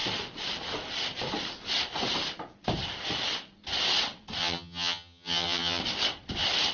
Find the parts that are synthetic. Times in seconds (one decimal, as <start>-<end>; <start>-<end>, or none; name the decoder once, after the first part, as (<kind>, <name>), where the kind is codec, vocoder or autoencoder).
4.4-5.8 (vocoder, HiFi-GAN)